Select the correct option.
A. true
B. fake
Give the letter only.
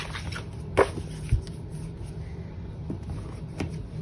A